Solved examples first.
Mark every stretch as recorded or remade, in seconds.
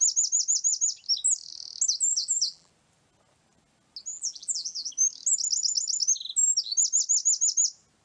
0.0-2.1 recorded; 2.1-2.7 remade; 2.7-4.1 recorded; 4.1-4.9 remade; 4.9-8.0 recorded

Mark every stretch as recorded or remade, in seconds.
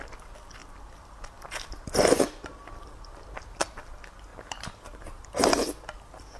0.0-4.3 recorded; 4.3-5.2 remade; 5.2-6.4 recorded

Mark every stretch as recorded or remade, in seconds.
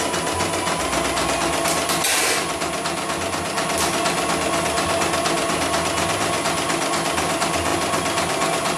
0.0-8.8 recorded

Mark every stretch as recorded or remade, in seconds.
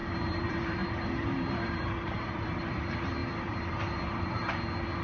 0.0-2.6 remade; 2.6-3.2 recorded; 3.2-4.5 remade; 4.5-5.0 recorded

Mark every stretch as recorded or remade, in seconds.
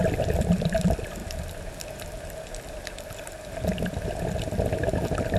0.0-5.4 recorded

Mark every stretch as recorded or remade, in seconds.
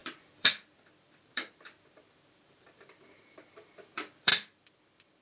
0.0-5.2 remade